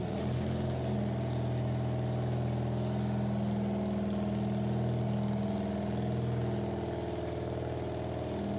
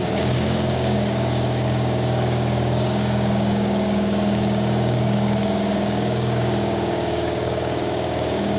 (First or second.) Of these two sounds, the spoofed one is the second